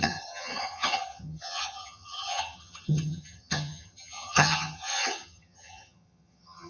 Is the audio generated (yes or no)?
yes